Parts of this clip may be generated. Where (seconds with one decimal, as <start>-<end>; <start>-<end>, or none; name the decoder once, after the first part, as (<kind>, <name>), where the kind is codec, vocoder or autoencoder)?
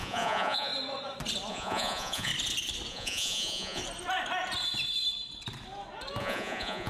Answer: 0.0-0.7 (vocoder, Vocos); 1.5-2.3; 2.9-3.8; 6.2-6.9